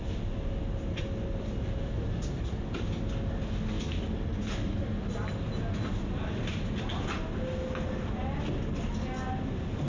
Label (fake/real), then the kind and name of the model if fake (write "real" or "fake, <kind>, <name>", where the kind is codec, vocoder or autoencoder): real